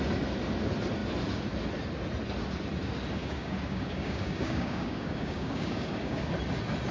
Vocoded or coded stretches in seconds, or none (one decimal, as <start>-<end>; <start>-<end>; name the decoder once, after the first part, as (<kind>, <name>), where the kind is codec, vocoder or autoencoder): 3.2-6.3 (codec, DAC)